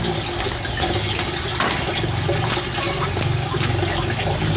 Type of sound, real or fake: real